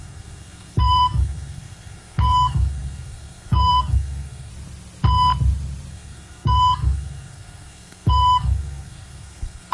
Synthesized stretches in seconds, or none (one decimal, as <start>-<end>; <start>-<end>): 0.0-4.5; 5.9-9.7